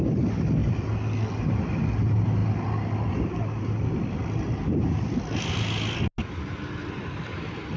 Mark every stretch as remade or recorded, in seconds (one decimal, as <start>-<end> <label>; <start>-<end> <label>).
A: 0.0-7.8 recorded